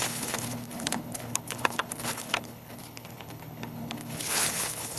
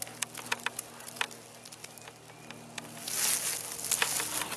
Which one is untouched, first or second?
second